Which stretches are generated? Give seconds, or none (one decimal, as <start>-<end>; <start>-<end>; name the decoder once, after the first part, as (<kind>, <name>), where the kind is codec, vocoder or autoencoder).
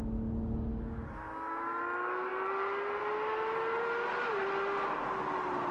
0.7-1.8 (autoencoder, DAC-VAE)